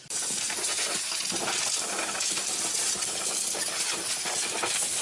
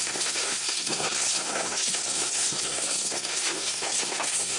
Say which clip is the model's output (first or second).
second